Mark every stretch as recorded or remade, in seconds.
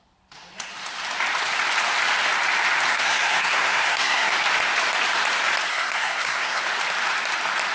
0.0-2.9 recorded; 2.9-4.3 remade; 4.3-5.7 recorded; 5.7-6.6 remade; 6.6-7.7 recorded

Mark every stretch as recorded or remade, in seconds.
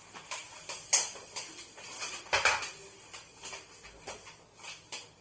0.0-5.2 recorded